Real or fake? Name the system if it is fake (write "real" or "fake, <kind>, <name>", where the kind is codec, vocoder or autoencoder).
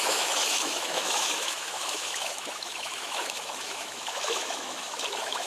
fake, autoencoder, DAC-VAE